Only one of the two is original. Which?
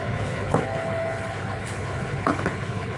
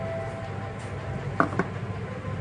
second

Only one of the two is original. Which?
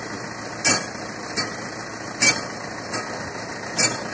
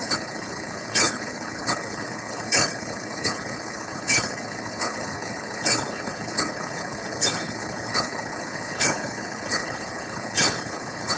first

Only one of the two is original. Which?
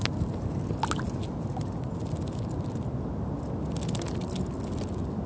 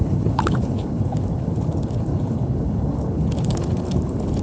first